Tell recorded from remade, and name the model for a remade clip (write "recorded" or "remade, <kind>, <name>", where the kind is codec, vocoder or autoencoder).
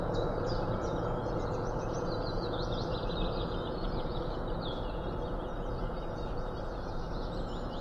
remade, vocoder, Vocos